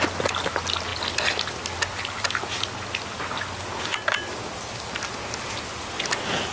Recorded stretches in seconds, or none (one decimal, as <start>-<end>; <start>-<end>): 0.0-6.5